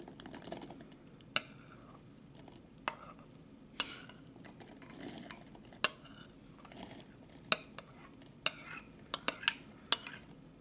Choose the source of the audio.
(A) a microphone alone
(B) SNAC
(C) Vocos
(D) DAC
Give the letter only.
A